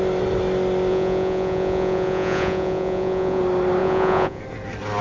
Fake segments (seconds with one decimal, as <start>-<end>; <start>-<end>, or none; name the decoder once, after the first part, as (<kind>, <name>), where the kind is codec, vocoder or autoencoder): 0.9-3.4 (vocoder, Vocos); 3.8-4.4